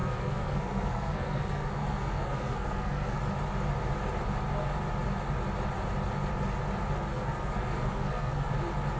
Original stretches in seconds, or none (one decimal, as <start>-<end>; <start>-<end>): 3.2-7.1; 8.5-9.0